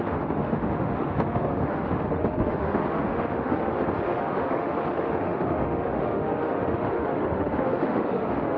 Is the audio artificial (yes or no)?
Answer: yes